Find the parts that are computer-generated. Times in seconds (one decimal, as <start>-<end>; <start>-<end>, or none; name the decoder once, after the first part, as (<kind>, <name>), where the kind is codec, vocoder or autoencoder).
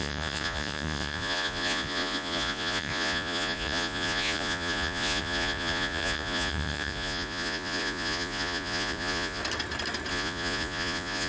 0.0-9.4 (vocoder, Vocos); 10.1-11.3